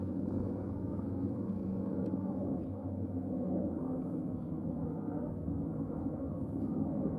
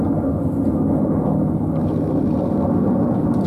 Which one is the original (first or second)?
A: second